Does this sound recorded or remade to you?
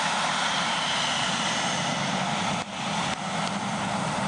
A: recorded